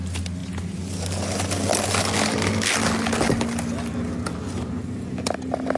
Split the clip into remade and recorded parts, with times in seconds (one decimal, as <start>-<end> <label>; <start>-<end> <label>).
0.0-5.8 recorded